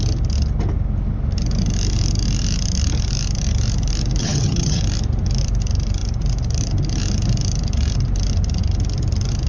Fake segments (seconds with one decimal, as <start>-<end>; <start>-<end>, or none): 4.2-4.8